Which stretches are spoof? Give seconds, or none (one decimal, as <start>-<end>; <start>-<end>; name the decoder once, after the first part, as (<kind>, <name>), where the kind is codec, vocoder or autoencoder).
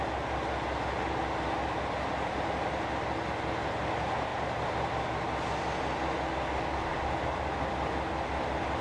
none